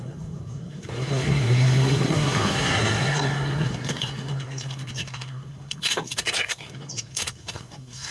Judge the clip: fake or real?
fake